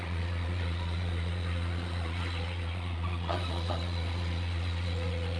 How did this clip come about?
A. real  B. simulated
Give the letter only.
B